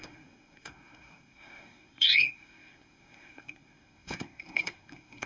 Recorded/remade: remade